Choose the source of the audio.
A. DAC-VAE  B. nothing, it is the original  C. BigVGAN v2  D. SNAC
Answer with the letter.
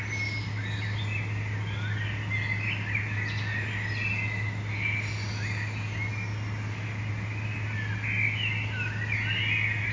B